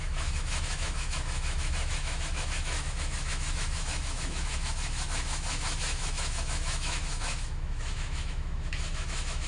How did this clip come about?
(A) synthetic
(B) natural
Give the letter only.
A